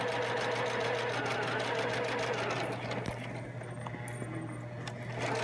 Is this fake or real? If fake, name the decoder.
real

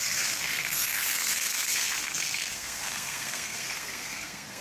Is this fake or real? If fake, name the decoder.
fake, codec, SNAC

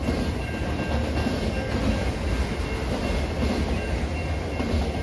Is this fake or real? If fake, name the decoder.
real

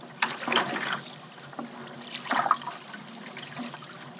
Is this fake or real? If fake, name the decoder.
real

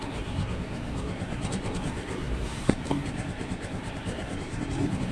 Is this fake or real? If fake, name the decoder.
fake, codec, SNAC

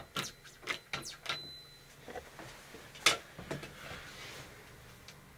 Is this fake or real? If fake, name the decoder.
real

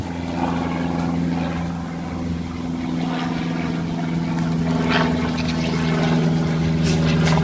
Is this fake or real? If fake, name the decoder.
real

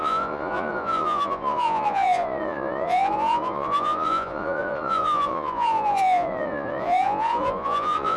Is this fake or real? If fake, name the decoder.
fake, vocoder, Vocos